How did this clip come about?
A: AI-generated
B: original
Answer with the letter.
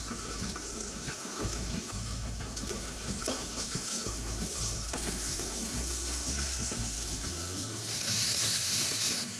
A